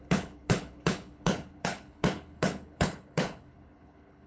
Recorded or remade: remade